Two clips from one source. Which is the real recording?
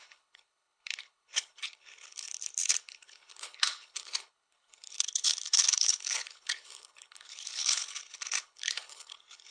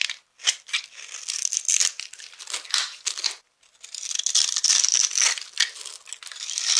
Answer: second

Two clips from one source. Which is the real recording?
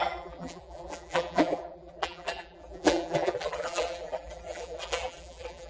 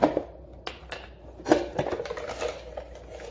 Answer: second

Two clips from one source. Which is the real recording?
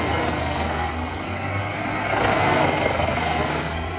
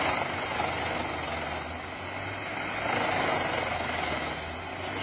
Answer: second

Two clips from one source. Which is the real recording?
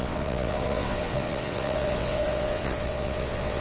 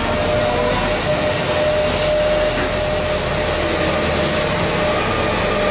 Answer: second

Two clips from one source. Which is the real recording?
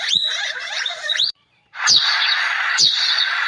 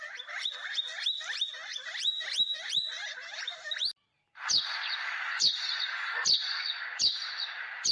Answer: second